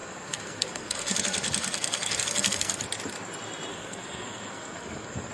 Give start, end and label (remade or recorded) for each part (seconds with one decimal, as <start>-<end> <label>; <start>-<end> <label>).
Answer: 0.0-2.8 remade; 2.8-3.7 recorded; 3.7-5.3 remade